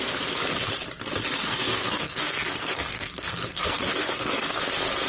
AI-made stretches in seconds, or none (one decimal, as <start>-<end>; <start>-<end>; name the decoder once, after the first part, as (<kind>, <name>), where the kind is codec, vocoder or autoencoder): 1.5-4.6 (codec, SNAC)